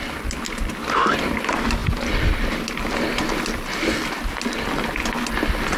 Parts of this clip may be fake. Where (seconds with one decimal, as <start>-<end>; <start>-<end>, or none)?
none